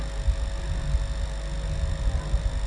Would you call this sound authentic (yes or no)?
yes